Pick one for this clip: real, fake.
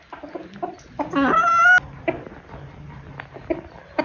real